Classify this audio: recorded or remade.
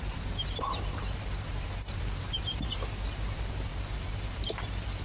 remade